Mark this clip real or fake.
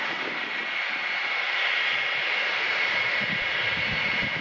real